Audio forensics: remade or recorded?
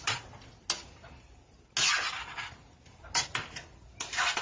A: recorded